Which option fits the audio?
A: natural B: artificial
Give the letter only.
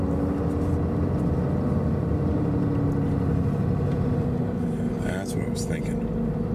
A